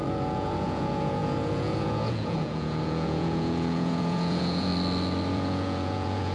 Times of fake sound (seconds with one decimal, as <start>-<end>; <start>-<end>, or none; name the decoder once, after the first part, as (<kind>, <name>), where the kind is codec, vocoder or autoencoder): 0.0-4.7 (vocoder, Vocos); 5.3-6.3